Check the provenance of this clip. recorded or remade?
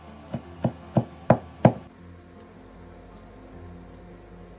recorded